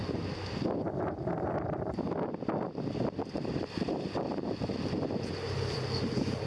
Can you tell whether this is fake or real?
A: fake